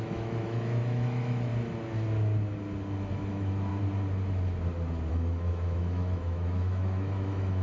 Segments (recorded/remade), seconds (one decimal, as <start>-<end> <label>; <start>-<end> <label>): 0.0-1.5 remade; 1.5-3.1 recorded; 3.1-3.7 remade; 3.7-5.1 recorded; 5.1-7.6 remade